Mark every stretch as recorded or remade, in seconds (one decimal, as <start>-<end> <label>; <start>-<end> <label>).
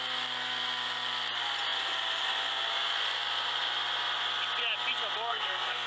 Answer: 0.0-5.3 recorded; 5.3-5.9 remade